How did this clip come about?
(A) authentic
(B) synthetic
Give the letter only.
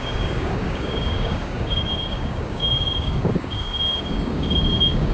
B